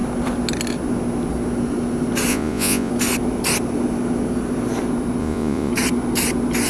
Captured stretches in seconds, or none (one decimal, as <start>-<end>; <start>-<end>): 0.0-2.3; 2.9-5.2; 5.7-6.7